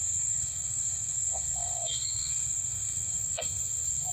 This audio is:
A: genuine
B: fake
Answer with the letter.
B